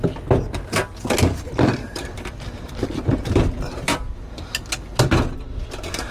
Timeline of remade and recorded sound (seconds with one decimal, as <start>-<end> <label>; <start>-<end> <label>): 0.0-1.3 recorded; 1.3-4.3 remade; 4.3-6.1 recorded